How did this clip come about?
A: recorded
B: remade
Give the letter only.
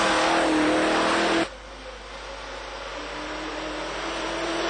A